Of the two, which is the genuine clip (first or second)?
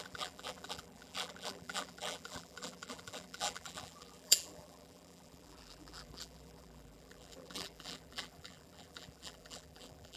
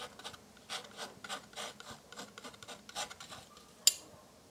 second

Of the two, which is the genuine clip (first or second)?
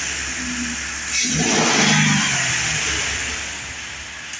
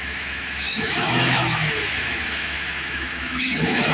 first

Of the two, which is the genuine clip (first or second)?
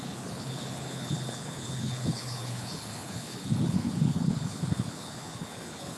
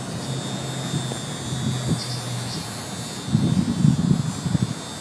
second